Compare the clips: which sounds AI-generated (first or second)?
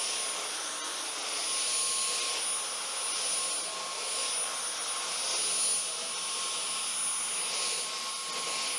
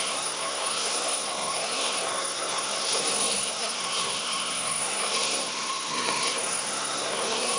second